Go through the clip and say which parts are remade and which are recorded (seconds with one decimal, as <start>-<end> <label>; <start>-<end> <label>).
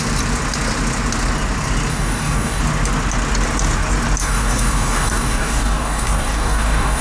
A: 0.0-1.9 recorded; 1.9-2.6 remade; 2.6-4.2 recorded; 4.2-7.0 remade